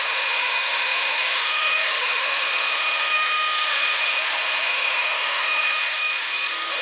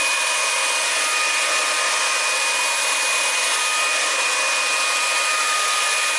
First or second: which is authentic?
second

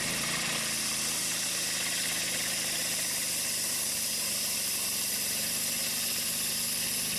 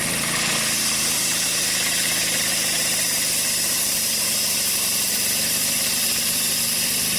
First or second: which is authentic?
first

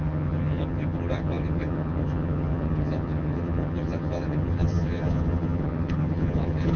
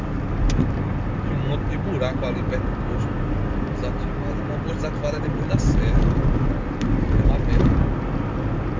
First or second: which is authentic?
second